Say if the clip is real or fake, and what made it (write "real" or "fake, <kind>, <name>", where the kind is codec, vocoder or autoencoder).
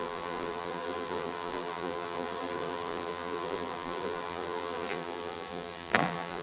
fake, vocoder, BigVGAN v2